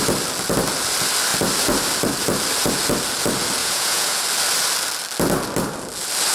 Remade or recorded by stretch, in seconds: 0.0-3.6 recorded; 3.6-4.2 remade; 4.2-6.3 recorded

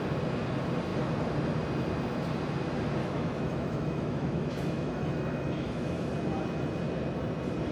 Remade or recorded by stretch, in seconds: 0.0-3.0 recorded; 3.0-6.1 remade; 6.1-7.7 recorded

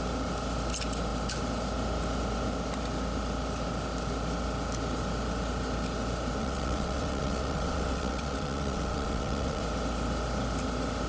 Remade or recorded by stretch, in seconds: 0.0-6.4 recorded; 6.4-9.6 remade; 9.6-11.1 recorded

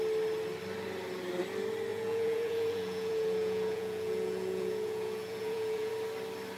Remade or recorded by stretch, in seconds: 0.0-1.9 recorded; 1.9-5.9 remade; 5.9-6.6 recorded

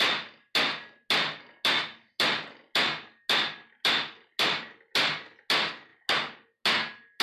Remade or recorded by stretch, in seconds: 0.0-7.2 recorded

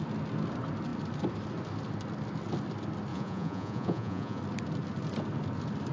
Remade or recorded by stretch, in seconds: 0.0-3.1 recorded; 3.1-4.4 remade; 4.4-5.9 recorded

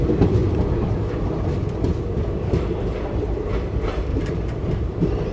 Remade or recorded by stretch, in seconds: 0.0-4.1 recorded; 4.1-4.8 remade; 4.8-5.3 recorded